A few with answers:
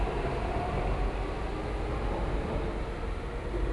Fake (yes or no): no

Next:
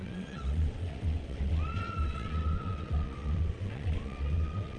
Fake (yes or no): yes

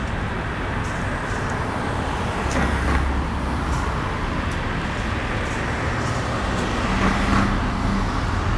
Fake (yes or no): no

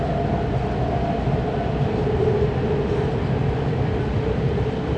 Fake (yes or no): no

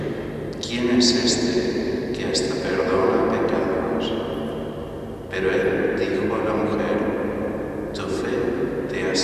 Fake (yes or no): no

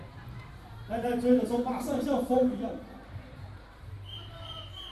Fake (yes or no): yes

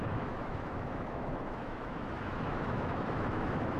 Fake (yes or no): yes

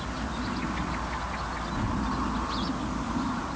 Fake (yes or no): no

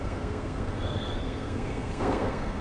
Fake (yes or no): yes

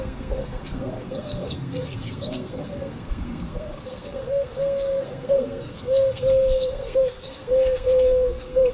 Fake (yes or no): yes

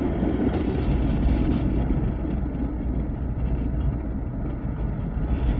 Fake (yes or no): no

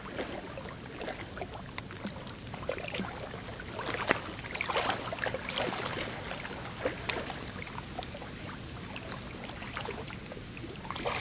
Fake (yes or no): no